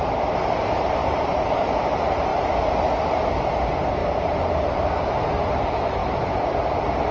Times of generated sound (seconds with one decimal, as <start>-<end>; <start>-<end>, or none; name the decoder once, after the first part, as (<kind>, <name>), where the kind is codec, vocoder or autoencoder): 1.0-1.5 (vocoder, BigVGAN v2); 4.0-5.3

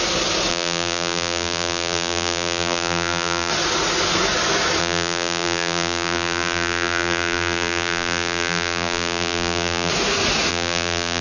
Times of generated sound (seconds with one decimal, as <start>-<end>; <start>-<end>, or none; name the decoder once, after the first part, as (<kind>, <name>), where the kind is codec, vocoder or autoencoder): 0.5-3.5 (vocoder, BigVGAN v2); 4.8-9.9; 10.5-11.2

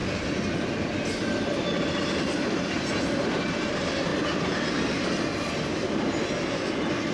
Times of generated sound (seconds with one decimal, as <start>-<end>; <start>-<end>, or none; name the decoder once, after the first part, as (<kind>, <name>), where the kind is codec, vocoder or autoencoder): 2.5-4.1 (vocoder, BigVGAN v2)

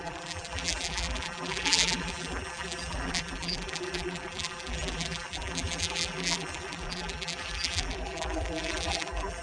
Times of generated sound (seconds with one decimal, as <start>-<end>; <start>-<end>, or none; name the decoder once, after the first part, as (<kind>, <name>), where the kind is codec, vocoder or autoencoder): 0.0-9.4 (vocoder, BigVGAN v2)

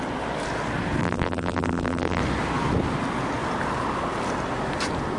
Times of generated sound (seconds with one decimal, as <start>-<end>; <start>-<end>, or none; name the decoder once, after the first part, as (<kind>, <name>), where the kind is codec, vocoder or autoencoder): 1.0-2.2 (vocoder, BigVGAN v2)

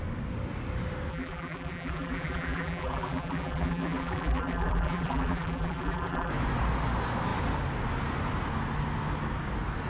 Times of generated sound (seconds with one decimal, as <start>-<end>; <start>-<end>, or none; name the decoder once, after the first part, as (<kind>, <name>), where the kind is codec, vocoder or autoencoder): 1.1-6.3 (vocoder, BigVGAN v2)